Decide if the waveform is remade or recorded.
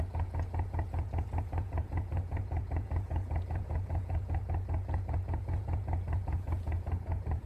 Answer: remade